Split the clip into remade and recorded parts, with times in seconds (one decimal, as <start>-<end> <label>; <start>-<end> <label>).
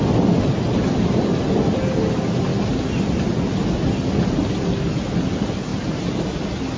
0.0-6.8 recorded